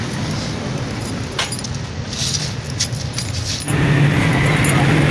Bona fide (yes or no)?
yes